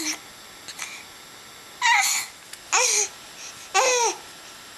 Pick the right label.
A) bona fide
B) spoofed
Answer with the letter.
A